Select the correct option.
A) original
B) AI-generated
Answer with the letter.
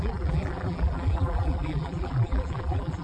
B